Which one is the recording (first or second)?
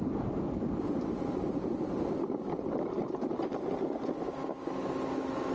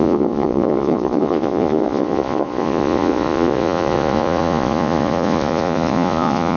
first